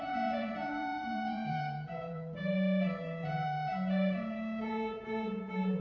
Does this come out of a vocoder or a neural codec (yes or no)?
yes